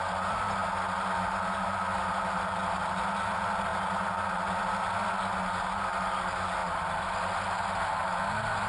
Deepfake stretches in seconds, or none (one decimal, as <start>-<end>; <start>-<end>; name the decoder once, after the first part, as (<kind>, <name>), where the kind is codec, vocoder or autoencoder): none